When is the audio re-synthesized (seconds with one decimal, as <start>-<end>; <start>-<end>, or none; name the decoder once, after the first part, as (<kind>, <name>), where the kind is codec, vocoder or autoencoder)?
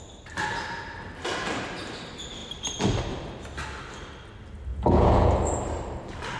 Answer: 4.7-5.3 (vocoder, Vocos)